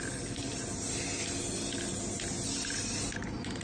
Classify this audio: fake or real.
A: real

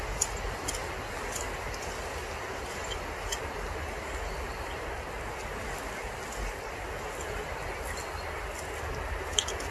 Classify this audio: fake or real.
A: real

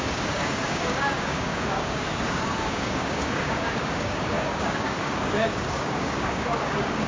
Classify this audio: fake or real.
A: fake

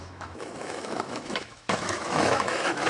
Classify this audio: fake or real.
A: fake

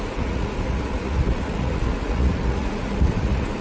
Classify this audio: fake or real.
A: fake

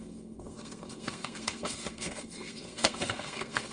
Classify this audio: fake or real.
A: fake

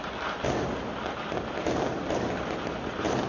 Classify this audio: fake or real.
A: real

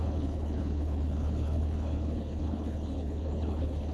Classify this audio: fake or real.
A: fake